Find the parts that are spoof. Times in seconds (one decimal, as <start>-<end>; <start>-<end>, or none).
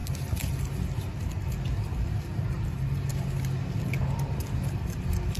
none